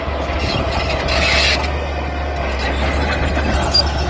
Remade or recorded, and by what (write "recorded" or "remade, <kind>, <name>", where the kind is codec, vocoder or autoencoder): recorded